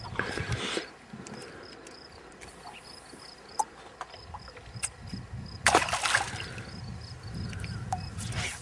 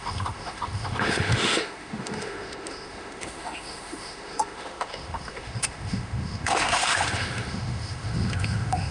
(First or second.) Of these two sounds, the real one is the first